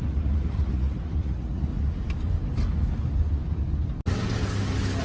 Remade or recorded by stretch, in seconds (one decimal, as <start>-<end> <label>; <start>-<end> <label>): 0.0-1.7 remade; 1.7-5.0 recorded